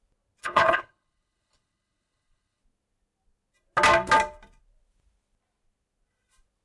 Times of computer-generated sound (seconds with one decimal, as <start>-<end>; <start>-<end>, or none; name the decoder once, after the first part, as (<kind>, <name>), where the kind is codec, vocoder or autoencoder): 0.4-2.6 (codec, HILCodec)